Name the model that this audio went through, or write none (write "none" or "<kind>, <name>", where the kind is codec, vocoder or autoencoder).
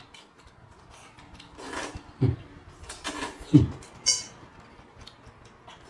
none